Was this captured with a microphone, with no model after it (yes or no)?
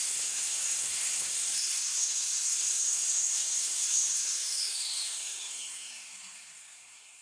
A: no